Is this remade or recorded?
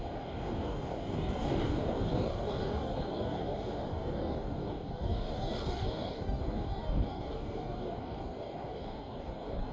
remade